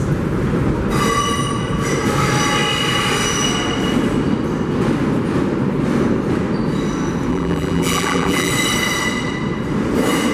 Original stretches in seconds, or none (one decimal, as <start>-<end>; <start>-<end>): 0.0-7.3; 8.5-10.3

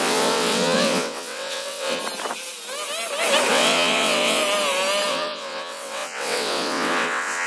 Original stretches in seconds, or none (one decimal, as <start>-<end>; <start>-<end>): 2.0-3.5; 4.4-5.1

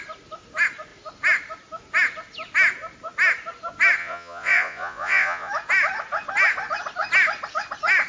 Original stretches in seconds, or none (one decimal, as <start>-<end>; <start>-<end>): 0.0-4.0; 5.5-8.1